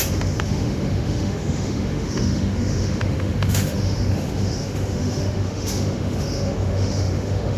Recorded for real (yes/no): no